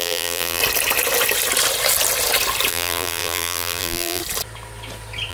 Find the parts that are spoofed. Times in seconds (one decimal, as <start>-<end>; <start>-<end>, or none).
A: 0.0-0.6; 2.7-4.2